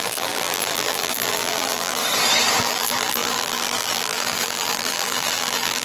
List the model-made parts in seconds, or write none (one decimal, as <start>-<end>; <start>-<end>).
0.0-2.0; 2.6-5.8